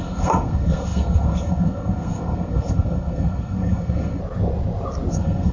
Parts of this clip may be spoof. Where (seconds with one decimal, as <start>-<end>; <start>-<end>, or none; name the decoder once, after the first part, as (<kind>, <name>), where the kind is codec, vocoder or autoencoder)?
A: 0.0-4.2 (codec, SNAC); 5.1-5.5